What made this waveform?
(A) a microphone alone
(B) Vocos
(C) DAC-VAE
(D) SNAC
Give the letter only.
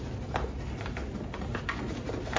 A